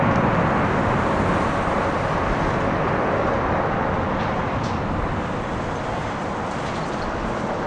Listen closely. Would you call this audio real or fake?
real